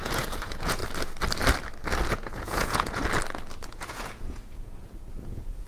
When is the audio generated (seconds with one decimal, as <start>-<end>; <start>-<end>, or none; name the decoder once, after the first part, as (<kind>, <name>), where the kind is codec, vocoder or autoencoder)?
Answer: 0.0-0.8 (vocoder, Vocos); 2.1-3.0; 3.7-5.7